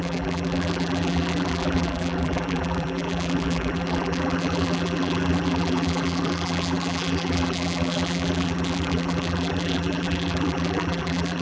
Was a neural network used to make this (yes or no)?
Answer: yes